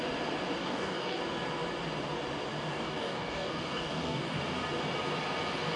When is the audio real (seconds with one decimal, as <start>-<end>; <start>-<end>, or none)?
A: 0.0-0.6; 1.2-2.7; 4.4-5.8